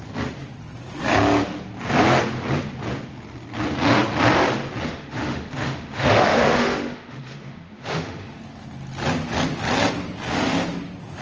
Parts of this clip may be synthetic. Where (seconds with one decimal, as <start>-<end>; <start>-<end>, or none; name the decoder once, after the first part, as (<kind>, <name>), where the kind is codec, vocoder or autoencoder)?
4.9-8.4 (autoencoder, DAC-VAE)